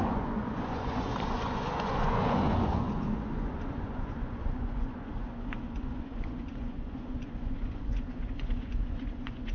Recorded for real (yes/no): no